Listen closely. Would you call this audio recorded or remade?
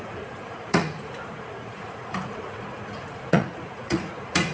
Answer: remade